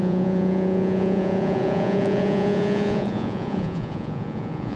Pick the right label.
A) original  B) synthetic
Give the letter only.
B